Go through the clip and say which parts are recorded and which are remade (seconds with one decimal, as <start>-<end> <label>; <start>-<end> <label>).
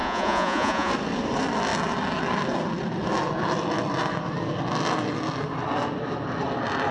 0.0-0.9 remade; 0.9-6.9 recorded